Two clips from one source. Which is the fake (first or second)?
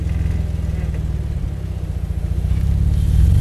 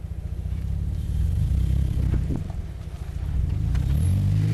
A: second